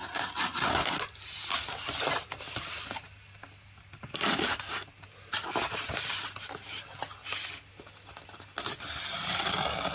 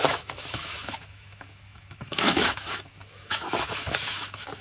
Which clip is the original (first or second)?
first